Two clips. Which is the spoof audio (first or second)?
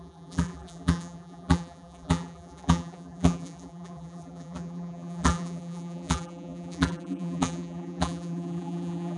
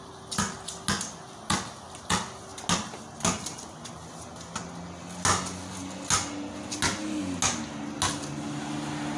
first